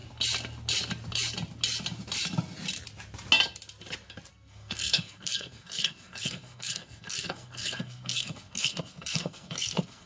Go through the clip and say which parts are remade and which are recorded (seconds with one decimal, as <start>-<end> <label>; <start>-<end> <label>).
0.0-4.3 recorded; 4.3-10.1 remade